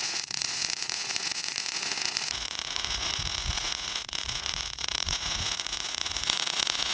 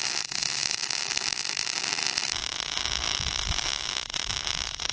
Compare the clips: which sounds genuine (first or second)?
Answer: second